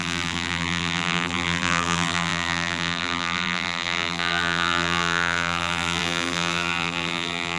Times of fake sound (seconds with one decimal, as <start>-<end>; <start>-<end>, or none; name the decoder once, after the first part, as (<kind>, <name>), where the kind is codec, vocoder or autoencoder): 0.0-7.6 (vocoder, BigVGAN v2)